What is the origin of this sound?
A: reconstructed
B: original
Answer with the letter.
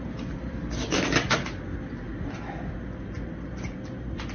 B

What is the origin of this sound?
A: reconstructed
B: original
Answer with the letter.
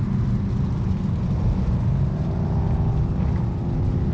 B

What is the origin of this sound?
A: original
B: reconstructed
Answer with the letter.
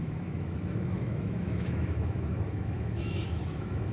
B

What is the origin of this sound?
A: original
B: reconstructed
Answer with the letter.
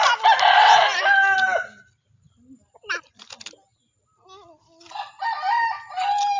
A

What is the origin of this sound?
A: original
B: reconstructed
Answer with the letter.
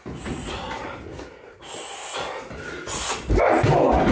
A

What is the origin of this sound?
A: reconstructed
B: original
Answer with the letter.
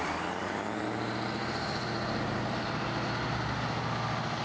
B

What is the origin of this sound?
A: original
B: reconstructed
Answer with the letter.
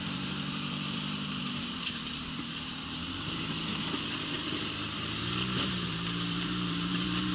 B